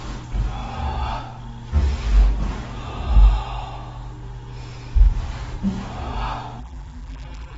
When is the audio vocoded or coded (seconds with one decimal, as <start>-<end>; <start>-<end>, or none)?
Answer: 6.6-7.6